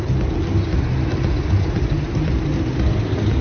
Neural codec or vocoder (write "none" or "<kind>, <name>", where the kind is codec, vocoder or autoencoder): none